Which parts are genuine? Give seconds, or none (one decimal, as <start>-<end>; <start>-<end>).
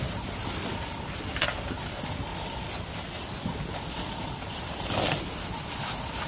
0.0-6.3